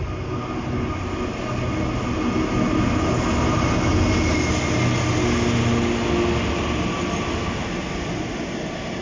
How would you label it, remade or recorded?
recorded